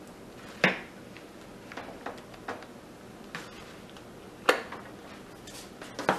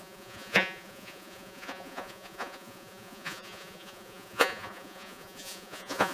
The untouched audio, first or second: first